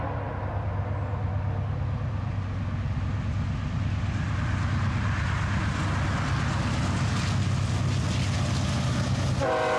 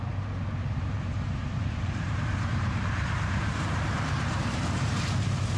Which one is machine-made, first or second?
second